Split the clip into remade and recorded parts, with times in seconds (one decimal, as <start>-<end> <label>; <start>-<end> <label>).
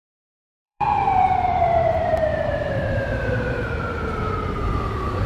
0.0-0.6 recorded; 0.6-3.8 remade; 3.8-5.3 recorded